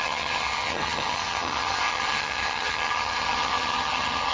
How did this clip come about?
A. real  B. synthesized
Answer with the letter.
B